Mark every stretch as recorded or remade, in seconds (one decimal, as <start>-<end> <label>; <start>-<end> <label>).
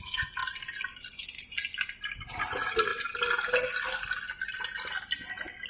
0.0-0.4 remade; 0.4-2.3 recorded; 2.3-2.9 remade; 2.9-5.7 recorded